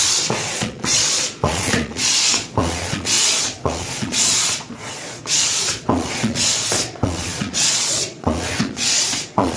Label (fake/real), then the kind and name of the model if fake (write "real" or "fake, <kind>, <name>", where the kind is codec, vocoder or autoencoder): fake, vocoder, Vocos